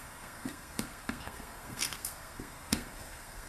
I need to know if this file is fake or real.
fake